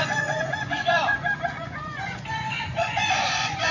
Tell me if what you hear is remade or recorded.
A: remade